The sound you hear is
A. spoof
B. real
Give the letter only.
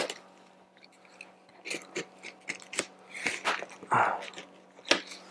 B